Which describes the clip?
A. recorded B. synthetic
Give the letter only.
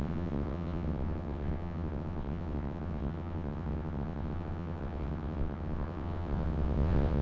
B